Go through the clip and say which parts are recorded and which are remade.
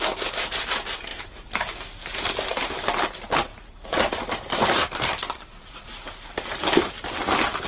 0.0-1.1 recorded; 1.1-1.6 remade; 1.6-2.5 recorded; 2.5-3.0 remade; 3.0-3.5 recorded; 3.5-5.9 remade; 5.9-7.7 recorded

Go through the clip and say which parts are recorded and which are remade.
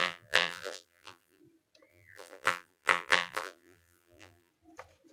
0.0-1.4 remade; 1.4-1.9 recorded; 1.9-4.5 remade; 4.5-5.1 recorded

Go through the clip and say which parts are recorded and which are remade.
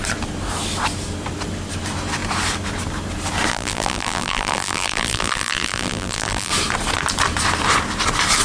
0.0-3.5 recorded; 3.5-6.5 remade; 6.5-8.4 recorded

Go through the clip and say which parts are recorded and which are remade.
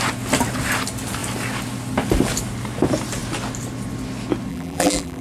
0.0-4.5 recorded; 4.5-5.2 remade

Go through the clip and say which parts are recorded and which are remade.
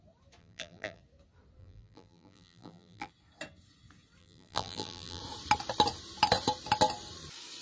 0.0-0.4 recorded; 0.4-1.0 remade; 1.0-1.6 recorded; 1.6-3.1 remade; 3.1-4.2 recorded; 4.2-5.2 remade; 5.2-7.6 recorded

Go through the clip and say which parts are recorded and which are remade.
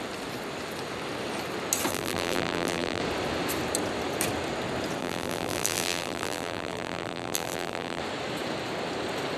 0.0-1.9 recorded; 1.9-3.0 remade; 3.0-5.0 recorded; 5.0-8.0 remade; 8.0-9.4 recorded